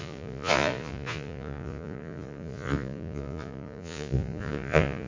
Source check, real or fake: fake